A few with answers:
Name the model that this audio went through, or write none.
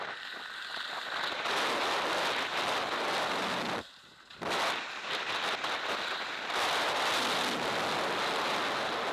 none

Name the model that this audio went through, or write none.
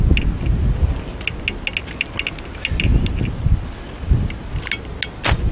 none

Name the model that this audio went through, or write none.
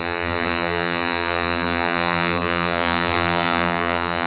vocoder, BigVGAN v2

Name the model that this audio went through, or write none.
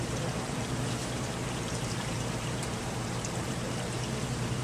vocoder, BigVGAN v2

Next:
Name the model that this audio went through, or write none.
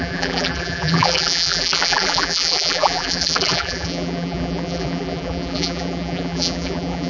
vocoder, BigVGAN v2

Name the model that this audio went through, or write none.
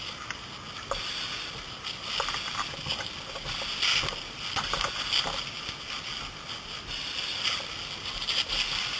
none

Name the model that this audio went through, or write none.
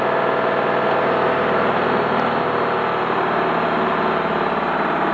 none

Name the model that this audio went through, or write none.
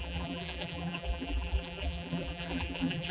vocoder, BigVGAN v2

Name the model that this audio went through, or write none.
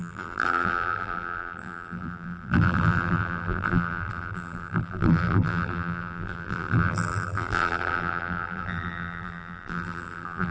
vocoder, BigVGAN v2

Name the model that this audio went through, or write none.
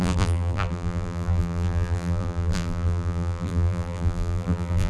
vocoder, BigVGAN v2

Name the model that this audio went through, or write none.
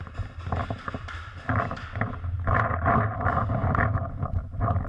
none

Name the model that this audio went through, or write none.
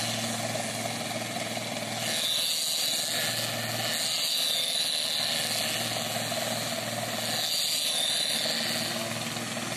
none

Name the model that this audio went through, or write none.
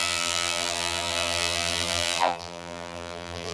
vocoder, BigVGAN v2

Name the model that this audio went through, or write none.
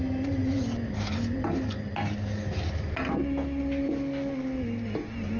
none